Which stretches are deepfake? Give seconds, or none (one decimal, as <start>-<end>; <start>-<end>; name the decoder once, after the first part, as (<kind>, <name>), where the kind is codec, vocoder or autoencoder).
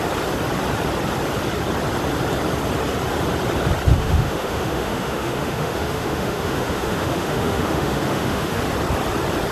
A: 3.9-8.6 (autoencoder, DAC-VAE)